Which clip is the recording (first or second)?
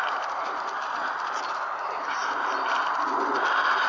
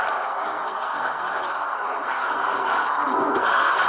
first